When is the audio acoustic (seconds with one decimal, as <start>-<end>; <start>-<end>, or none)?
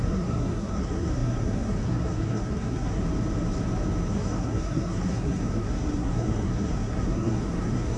3.0-4.1